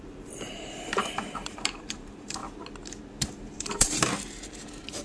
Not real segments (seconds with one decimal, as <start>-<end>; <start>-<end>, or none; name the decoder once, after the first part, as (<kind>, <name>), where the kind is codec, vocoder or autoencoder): 0.0-2.4 (vocoder, BigVGAN v2); 3.5-5.0